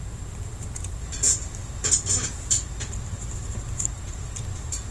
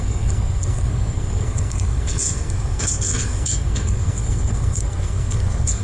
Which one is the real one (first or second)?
first